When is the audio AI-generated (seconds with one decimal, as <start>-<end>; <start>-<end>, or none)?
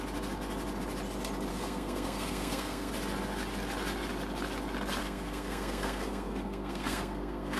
1.5-2.9; 5.0-7.6